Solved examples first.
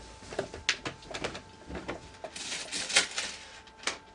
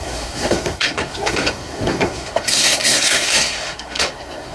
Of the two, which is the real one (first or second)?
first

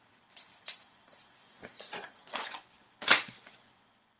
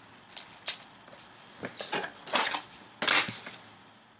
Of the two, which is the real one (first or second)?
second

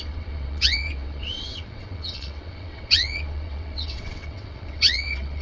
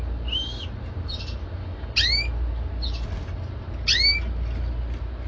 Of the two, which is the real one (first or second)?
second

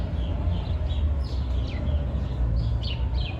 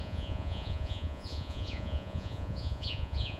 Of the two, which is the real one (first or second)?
first